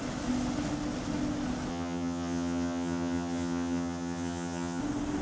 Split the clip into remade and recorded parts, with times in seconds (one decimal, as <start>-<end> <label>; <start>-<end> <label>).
0.0-1.7 recorded; 1.7-4.8 remade; 4.8-5.2 recorded